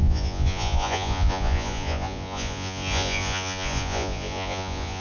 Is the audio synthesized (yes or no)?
yes